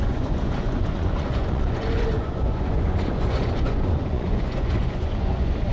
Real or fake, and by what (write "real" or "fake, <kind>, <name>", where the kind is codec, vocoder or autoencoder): fake, vocoder, Vocos